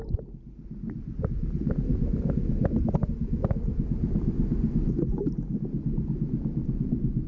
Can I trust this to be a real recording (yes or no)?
yes